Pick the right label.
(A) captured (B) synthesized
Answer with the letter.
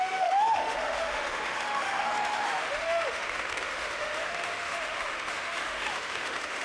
B